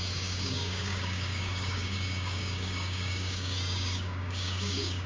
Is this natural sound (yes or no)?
no